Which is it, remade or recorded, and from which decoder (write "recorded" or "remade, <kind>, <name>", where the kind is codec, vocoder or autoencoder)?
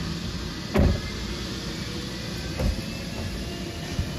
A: recorded